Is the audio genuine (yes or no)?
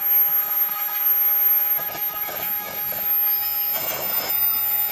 no